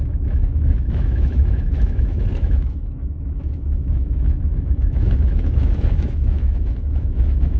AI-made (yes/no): yes